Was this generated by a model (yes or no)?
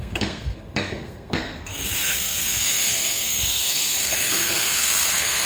yes